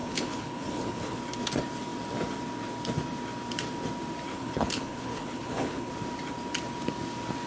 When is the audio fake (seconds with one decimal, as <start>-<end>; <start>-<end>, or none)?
0.0-1.2; 4.3-5.9